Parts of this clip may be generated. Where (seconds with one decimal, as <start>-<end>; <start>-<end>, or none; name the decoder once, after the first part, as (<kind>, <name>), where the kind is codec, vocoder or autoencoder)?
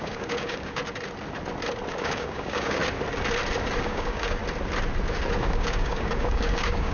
0.0-0.8 (codec, DAC); 1.9-2.8; 3.8-4.4; 5.4-6.9